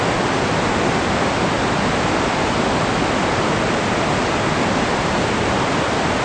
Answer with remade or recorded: recorded